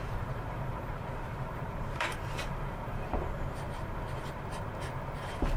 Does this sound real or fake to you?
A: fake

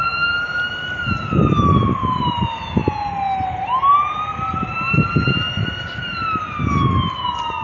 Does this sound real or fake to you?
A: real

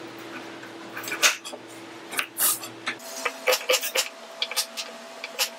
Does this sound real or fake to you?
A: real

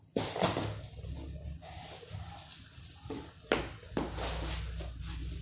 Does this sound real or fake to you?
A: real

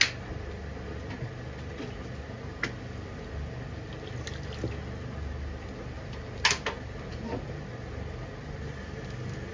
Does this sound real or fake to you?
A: real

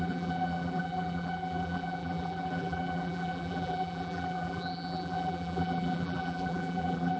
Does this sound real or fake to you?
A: fake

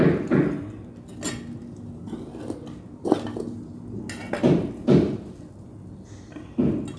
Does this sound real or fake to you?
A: real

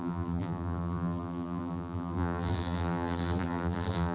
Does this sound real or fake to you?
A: fake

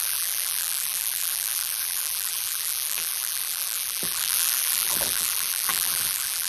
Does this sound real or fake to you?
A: fake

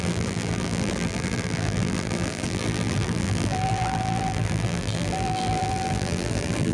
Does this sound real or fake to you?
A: fake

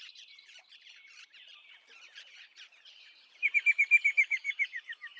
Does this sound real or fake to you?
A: fake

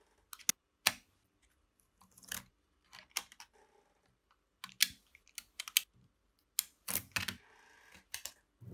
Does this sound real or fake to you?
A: real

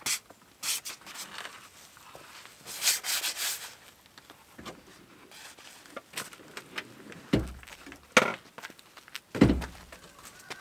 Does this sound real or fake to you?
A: real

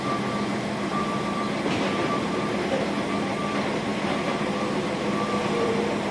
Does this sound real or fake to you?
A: fake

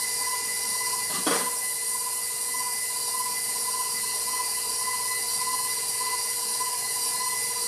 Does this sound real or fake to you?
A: real